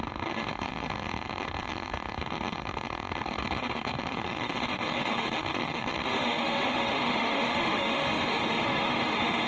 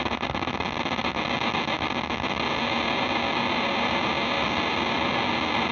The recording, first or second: second